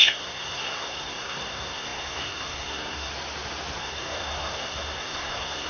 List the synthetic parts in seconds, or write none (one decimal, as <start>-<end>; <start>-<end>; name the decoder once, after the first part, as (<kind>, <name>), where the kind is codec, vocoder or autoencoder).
0.0-3.1 (codec, SNAC); 3.8-5.7